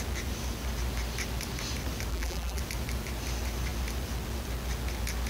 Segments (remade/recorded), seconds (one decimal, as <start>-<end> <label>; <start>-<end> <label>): 0.0-2.1 recorded; 2.1-2.6 remade; 2.6-5.3 recorded